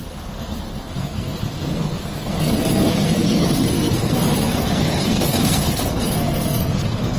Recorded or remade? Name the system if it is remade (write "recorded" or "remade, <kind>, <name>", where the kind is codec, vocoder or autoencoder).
remade, codec, SNAC